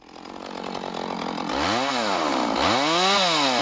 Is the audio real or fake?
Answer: real